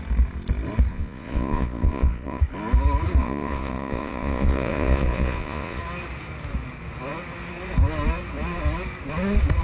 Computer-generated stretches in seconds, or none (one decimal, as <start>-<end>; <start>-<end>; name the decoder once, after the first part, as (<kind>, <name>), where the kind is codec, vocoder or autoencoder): 0.9-2.4 (vocoder, Vocos); 3.2-5.8